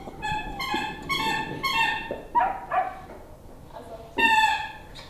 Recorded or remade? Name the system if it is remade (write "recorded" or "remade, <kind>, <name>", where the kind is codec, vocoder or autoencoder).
recorded